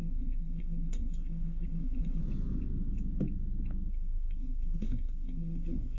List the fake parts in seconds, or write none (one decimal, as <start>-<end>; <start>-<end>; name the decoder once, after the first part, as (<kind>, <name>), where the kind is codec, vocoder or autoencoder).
0.0-2.2 (codec, SNAC); 3.9-6.0

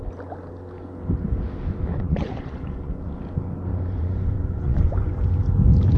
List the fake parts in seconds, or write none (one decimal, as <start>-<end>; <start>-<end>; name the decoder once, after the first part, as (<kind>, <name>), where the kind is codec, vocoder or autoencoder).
1.9-3.2 (vocoder, Vocos); 3.7-5.1

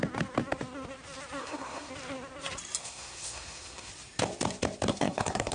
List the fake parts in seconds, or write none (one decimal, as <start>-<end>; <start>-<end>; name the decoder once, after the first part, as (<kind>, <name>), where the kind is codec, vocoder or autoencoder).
1.4-1.9 (codec, SNAC); 2.8-3.9; 4.9-5.5

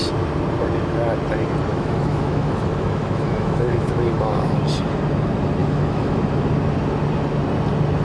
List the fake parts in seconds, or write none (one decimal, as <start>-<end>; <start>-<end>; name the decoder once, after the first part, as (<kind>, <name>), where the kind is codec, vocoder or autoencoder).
1.7-4.6 (autoencoder, DAC-VAE); 5.6-6.2

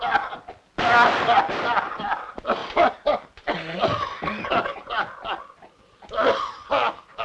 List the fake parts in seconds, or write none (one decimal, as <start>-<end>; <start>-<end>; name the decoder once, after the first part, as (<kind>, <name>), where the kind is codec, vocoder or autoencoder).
none

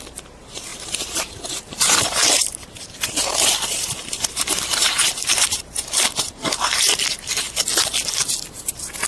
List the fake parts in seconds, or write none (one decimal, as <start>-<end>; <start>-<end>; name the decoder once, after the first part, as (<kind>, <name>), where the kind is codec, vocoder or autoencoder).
0.7-5.2 (vocoder, BigVGAN v2)